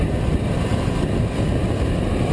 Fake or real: real